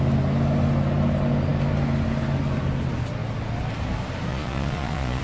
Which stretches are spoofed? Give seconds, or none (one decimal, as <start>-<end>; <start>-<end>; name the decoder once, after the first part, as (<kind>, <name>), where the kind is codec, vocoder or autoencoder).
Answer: 4.3-5.2 (vocoder, Vocos)